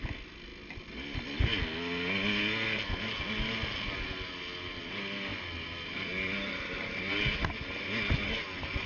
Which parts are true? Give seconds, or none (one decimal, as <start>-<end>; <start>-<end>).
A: 0.0-8.9

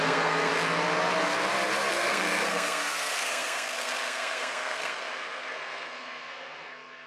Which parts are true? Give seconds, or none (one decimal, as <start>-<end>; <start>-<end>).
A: 0.5-1.9

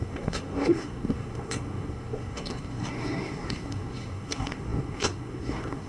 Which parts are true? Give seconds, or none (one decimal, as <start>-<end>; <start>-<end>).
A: none